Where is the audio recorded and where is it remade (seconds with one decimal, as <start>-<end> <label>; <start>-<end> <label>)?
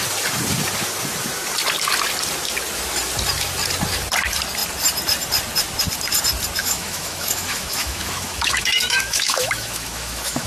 0.0-6.6 recorded; 6.6-10.5 remade